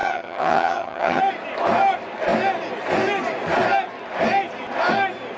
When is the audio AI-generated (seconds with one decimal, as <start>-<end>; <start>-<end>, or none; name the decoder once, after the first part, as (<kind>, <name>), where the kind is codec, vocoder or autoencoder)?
0.0-1.2 (vocoder, HiFi-GAN)

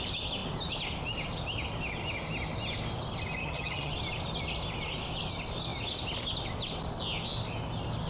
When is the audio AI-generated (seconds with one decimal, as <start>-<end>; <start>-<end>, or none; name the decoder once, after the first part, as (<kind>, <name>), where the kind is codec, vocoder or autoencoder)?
3.4-3.9 (vocoder, HiFi-GAN)